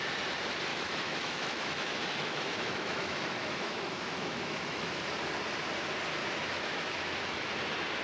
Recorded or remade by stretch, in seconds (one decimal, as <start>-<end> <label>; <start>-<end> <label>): 0.0-0.7 recorded; 0.7-5.0 remade; 5.0-6.2 recorded; 6.2-7.5 remade; 7.5-8.0 recorded